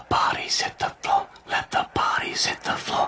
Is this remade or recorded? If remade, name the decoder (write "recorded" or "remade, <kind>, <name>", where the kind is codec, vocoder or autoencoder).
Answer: recorded